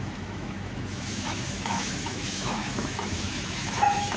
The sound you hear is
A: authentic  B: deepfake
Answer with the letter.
B